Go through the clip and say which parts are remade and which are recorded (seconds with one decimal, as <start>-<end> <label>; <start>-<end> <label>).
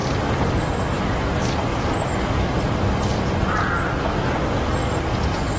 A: 0.0-0.5 remade; 0.5-4.8 recorded; 4.8-5.6 remade